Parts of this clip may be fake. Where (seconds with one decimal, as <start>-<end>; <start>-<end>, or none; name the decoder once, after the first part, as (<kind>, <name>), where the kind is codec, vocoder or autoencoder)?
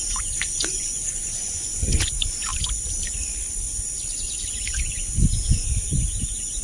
0.0-2.5 (vocoder, Vocos); 4.7-6.6